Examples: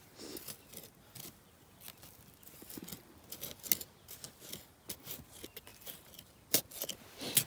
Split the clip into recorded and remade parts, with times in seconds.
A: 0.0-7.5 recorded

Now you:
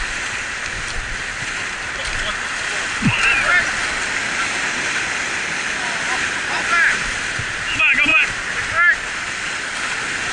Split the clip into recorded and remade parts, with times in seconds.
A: 0.0-10.3 recorded